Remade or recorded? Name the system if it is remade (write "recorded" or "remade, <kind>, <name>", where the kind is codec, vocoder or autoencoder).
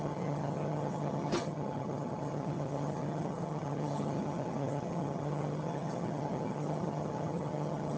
remade, vocoder, HiFi-GAN